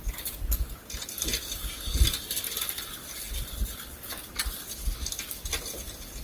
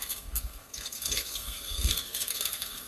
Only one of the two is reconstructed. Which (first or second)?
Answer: second